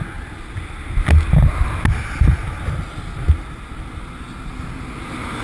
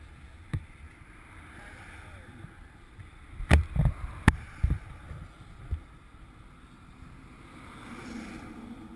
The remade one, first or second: second